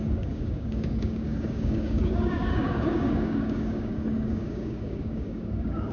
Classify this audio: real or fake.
fake